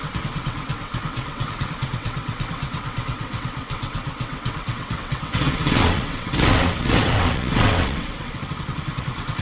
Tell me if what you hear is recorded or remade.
remade